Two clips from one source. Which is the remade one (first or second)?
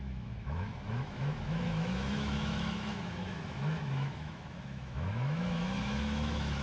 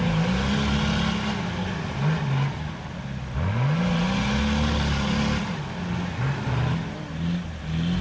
first